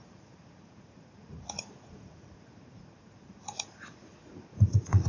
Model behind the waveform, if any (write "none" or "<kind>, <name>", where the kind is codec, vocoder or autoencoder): vocoder, Vocos